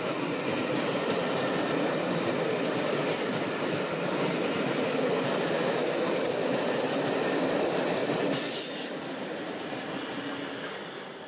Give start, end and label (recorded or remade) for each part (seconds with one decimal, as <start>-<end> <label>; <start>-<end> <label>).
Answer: 0.0-11.3 recorded